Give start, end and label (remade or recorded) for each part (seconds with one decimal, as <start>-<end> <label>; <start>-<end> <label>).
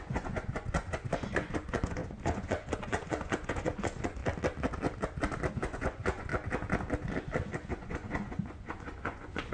0.0-4.2 remade; 4.2-5.5 recorded; 5.5-6.3 remade; 6.3-7.7 recorded; 7.7-9.5 remade